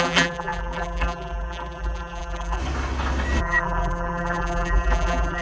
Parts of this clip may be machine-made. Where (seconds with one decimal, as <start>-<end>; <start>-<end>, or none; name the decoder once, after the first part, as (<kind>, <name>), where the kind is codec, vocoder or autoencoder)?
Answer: 0.0-2.6 (vocoder, BigVGAN v2); 3.4-5.4